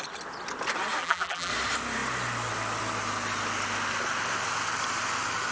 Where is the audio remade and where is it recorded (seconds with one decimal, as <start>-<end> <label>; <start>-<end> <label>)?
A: 0.0-1.0 recorded; 1.0-1.5 remade; 1.5-5.5 recorded